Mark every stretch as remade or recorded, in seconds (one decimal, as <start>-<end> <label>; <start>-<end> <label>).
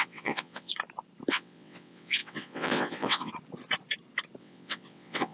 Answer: 0.0-0.7 remade; 0.7-1.3 recorded; 1.3-3.3 remade; 3.3-4.4 recorded; 4.4-5.3 remade